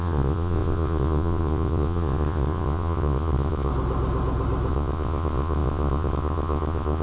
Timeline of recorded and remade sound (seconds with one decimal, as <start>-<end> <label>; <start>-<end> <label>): 0.0-3.7 remade; 3.7-4.7 recorded; 4.7-7.0 remade